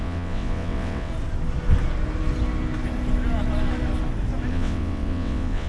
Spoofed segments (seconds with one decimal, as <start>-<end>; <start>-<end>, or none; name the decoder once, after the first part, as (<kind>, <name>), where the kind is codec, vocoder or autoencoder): 0.0-1.1 (vocoder, WaveNeXt); 4.5-5.7